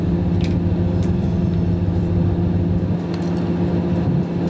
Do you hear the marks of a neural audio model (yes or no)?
no